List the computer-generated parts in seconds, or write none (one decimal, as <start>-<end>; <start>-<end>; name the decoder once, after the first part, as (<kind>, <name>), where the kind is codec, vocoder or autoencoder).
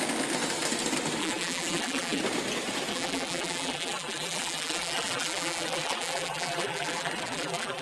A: 1.2-2.2 (vocoder, BigVGAN v2); 2.9-7.8